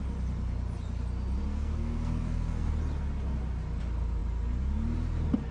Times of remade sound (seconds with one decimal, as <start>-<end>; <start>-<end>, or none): 1.5-2.7